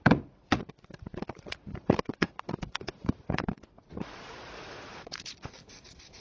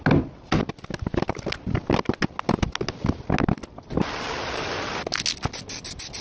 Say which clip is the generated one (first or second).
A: first